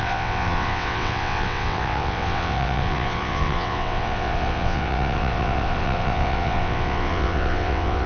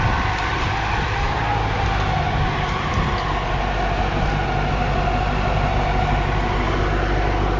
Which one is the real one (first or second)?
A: second